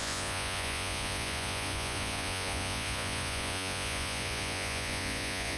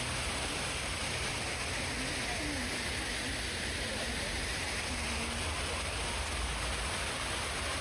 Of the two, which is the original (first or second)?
second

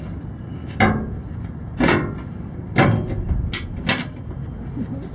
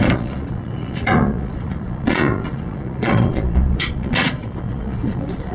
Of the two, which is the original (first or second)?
first